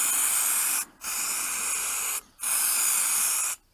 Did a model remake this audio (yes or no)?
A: no